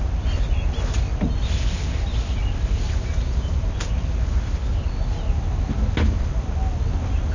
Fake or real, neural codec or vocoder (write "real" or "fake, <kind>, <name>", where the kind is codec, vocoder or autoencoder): real